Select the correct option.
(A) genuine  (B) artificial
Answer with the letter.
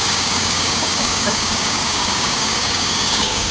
B